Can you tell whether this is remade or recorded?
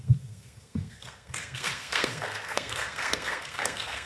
remade